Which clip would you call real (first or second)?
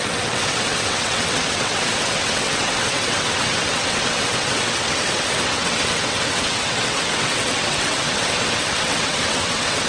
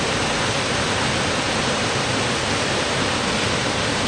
second